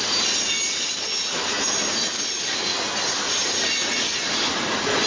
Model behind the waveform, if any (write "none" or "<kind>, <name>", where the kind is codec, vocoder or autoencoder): none